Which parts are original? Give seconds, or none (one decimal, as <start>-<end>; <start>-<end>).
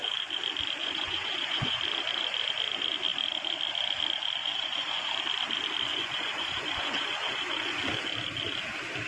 0.0-0.8; 1.8-4.4; 5.1-5.9; 7.8-9.1